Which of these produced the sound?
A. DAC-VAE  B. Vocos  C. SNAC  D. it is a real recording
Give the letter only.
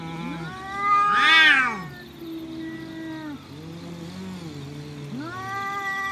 D